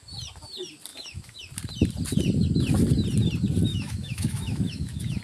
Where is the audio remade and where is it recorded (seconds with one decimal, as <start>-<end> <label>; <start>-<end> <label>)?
0.0-0.9 recorded; 0.9-1.4 remade; 1.4-3.7 recorded; 3.7-5.2 remade